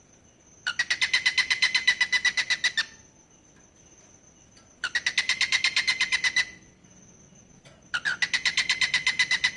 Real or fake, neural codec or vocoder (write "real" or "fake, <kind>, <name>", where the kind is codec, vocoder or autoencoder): real